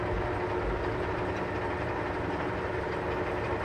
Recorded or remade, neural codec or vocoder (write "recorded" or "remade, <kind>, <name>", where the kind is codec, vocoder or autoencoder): recorded